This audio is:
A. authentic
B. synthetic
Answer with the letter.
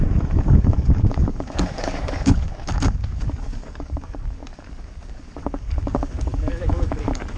B